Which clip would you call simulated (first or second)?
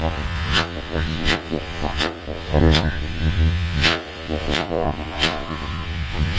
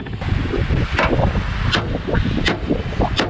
first